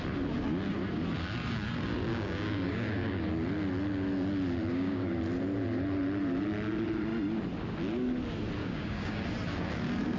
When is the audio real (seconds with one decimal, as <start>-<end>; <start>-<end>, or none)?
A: 0.0-2.1; 3.2-4.7; 5.2-8.6; 9.2-10.2